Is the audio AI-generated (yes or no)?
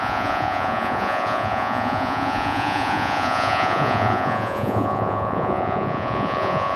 yes